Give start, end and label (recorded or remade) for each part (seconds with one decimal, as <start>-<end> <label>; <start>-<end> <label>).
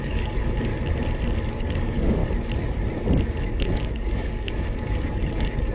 0.0-0.7 remade; 0.7-1.5 recorded; 1.5-2.2 remade; 2.2-3.4 recorded; 3.4-5.7 remade